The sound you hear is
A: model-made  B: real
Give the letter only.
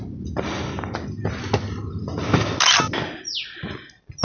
B